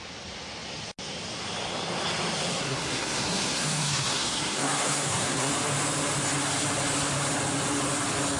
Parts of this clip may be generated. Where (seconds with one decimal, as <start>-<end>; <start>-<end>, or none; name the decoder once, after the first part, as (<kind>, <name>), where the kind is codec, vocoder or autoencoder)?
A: 2.5-5.5 (codec, SNAC)